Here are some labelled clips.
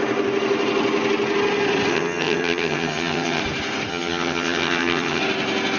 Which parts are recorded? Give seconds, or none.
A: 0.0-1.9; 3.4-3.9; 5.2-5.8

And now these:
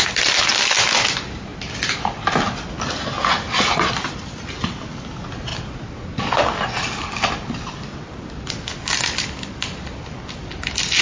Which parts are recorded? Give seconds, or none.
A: 0.0-11.0

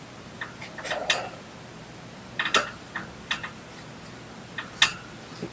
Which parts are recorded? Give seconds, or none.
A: 0.0-5.5

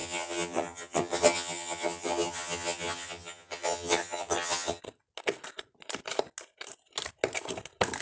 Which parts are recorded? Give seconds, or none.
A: 4.8-8.0

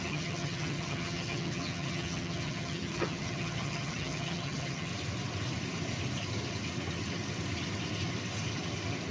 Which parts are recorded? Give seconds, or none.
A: 4.9-9.1